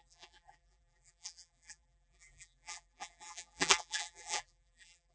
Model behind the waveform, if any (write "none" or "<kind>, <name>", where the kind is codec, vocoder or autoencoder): vocoder, BigVGAN v2